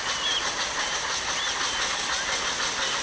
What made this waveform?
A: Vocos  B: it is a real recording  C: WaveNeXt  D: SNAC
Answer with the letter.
B